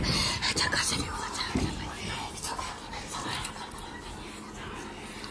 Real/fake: real